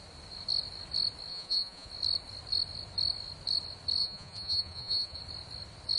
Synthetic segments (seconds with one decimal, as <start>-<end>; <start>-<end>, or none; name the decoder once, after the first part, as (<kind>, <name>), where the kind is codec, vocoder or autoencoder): 1.3-1.9 (vocoder, Vocos); 4.0-5.2